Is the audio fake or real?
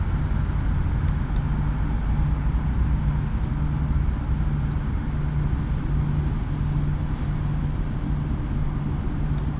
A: real